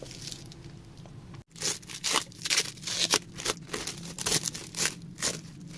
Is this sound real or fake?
real